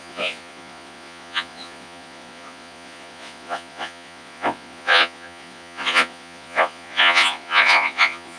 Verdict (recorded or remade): remade